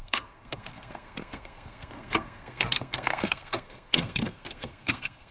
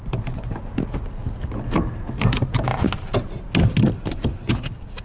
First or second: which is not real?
first